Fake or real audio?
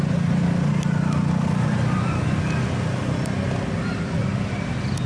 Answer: real